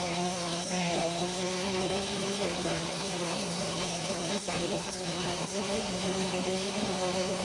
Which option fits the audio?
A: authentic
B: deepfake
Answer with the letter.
B